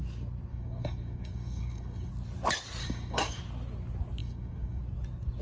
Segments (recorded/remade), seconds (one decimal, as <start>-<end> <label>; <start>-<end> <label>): 0.0-0.5 recorded; 0.5-2.1 remade; 2.1-2.8 recorded; 2.8-3.4 remade; 3.4-4.2 recorded; 4.2-4.8 remade; 4.8-5.4 recorded

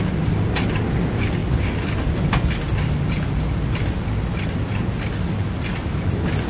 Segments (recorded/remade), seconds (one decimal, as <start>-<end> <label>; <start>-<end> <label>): 0.0-6.5 recorded

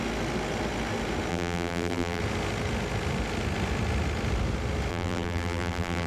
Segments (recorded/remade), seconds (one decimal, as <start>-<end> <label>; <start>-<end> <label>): 0.0-1.3 recorded; 1.3-2.2 remade; 2.2-4.9 recorded; 4.9-6.1 remade

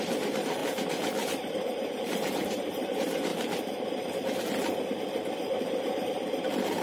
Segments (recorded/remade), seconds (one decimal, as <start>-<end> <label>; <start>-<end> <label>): 0.0-0.6 remade; 0.6-1.5 recorded; 1.5-3.3 remade; 3.3-5.6 recorded; 5.6-6.8 remade

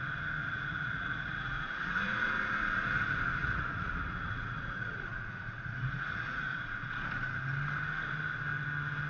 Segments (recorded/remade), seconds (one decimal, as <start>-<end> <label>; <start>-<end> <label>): 0.0-0.4 recorded; 0.4-2.8 remade; 2.8-3.4 recorded; 3.4-7.1 remade; 7.1-9.1 recorded

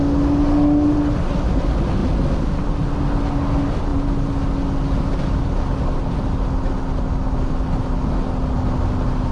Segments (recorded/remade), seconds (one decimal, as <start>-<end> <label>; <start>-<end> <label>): 0.0-9.3 recorded

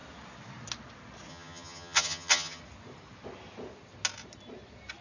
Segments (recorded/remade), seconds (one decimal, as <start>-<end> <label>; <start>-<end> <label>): 0.0-1.3 recorded; 1.3-2.6 remade; 2.6-5.0 recorded

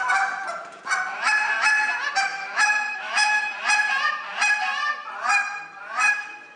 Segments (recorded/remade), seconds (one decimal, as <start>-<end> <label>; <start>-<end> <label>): 0.0-2.3 recorded; 2.3-3.4 remade; 3.4-6.6 recorded